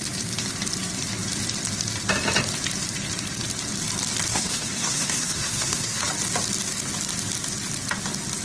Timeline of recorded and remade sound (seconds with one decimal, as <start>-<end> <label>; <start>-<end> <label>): 0.0-4.3 recorded; 4.3-6.0 remade; 6.0-8.4 recorded